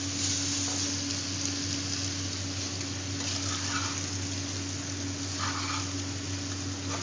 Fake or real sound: real